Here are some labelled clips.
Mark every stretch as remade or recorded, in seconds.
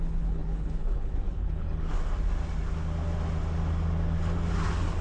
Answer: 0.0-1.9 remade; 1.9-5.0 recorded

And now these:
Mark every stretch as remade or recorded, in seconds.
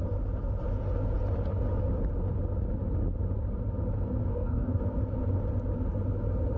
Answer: 0.0-4.3 recorded; 4.3-4.8 remade; 4.8-6.6 recorded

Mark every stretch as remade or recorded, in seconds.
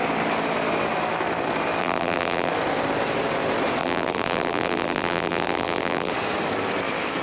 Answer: 0.0-1.8 recorded; 1.8-2.5 remade; 2.5-3.8 recorded; 3.8-6.1 remade; 6.1-7.2 recorded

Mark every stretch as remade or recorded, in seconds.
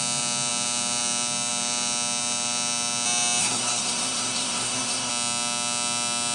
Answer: 0.0-3.4 recorded; 3.4-5.1 remade; 5.1-6.3 recorded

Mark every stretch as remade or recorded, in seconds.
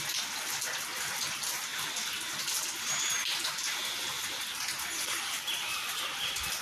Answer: 0.0-6.6 recorded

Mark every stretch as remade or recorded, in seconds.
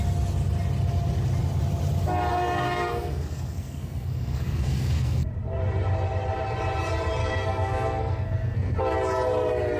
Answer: 0.0-2.3 recorded; 2.3-5.3 remade; 5.3-7.2 recorded; 7.2-8.8 remade; 8.8-9.8 recorded